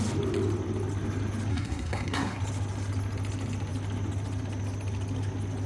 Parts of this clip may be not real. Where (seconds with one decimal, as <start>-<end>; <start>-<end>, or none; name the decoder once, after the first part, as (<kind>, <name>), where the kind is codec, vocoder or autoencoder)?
1.5-2.4 (codec, SNAC)